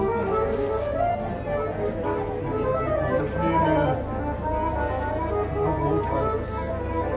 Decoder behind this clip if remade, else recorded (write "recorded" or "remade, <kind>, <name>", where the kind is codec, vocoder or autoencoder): recorded